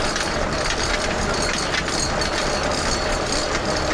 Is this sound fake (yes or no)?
no